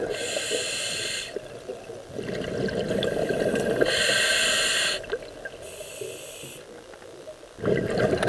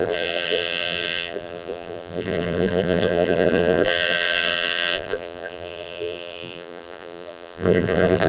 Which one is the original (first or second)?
first